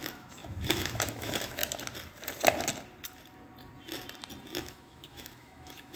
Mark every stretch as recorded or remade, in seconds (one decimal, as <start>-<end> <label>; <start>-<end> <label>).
0.0-1.6 remade; 1.6-4.6 recorded; 4.6-6.0 remade